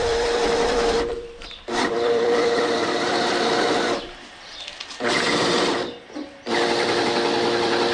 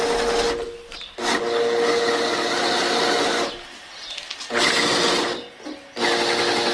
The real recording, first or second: second